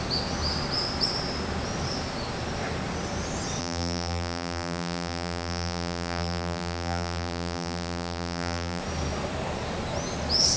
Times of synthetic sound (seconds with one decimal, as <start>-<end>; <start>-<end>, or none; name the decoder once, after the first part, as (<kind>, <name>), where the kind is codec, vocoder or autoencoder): 3.6-8.8 (vocoder, BigVGAN v2)